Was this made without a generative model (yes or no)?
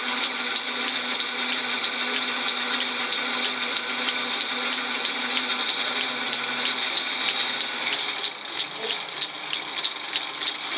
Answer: yes